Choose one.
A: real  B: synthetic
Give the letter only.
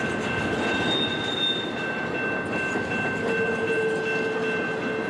A